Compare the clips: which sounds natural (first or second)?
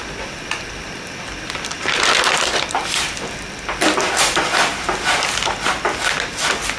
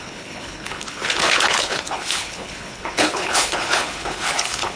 first